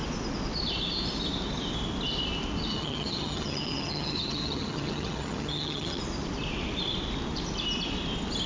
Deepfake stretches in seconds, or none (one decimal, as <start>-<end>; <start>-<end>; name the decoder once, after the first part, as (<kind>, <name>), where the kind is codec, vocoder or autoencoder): 2.7-6.0 (vocoder, HiFi-GAN)